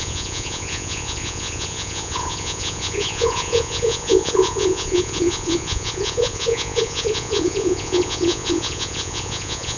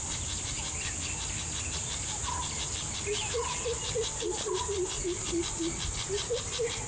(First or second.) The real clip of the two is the second